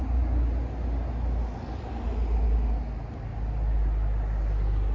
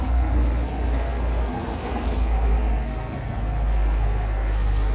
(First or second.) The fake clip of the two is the second